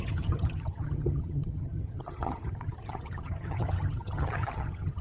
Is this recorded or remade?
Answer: remade